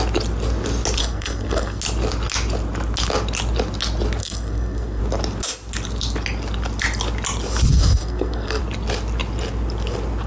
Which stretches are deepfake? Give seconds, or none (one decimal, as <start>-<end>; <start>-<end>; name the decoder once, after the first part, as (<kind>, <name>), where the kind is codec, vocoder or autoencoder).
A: 1.0-1.8 (codec, SNAC); 4.2-5.0; 7.7-8.6